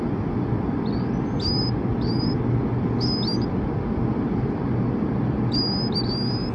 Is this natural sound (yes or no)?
yes